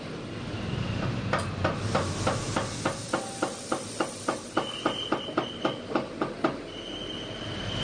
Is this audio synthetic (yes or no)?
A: no